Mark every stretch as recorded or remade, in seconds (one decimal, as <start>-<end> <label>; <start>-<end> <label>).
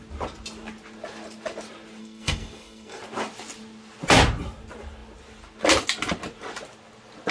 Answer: 0.0-2.0 recorded; 2.0-3.0 remade; 3.0-7.3 recorded